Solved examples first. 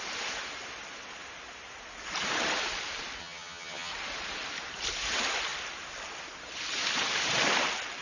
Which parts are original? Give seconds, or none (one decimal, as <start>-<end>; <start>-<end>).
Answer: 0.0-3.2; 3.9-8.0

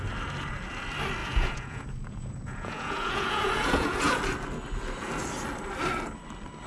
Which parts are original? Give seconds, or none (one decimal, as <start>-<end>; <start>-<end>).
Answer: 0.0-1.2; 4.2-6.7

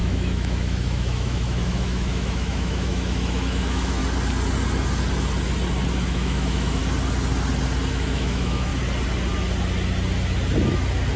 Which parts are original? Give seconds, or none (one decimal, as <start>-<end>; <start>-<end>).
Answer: 4.0-5.9; 6.8-7.9; 8.7-11.2